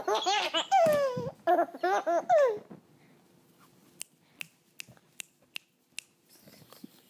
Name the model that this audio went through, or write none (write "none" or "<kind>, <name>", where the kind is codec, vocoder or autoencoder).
none